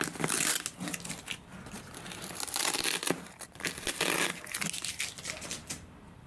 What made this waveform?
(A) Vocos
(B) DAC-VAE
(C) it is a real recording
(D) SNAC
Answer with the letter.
C